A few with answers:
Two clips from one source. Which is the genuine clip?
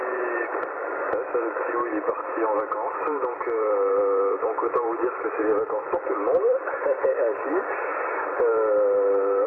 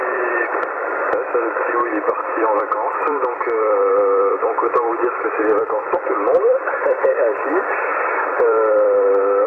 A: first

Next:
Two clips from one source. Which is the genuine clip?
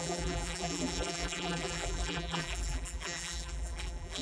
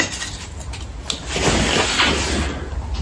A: second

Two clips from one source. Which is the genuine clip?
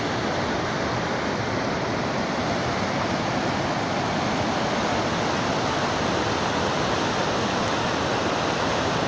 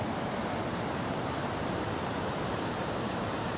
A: first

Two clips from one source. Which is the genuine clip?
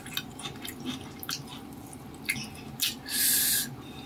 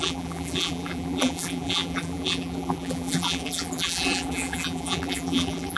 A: first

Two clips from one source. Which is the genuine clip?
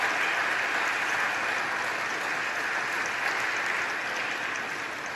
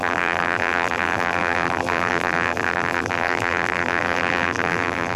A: first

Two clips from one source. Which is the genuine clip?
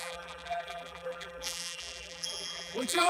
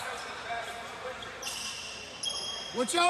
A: second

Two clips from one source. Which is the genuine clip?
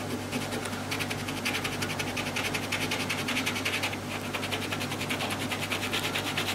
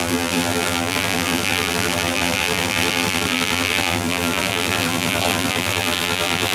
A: first